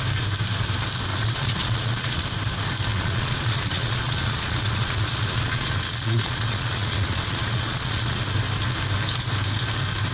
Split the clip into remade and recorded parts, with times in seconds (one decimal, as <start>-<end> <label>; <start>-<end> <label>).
0.0-1.1 recorded; 1.1-2.2 remade; 2.2-2.9 recorded; 2.9-8.2 remade; 8.2-10.1 recorded